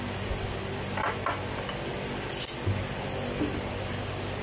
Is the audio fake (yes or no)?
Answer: no